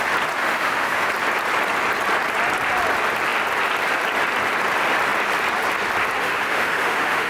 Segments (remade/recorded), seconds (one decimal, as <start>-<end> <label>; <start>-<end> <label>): 0.0-0.4 recorded; 0.4-1.1 remade; 1.1-6.2 recorded; 6.2-7.3 remade